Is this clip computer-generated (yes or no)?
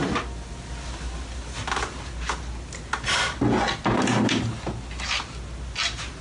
no